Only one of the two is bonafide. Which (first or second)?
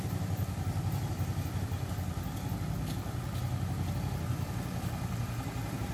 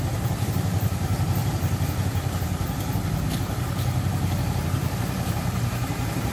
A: first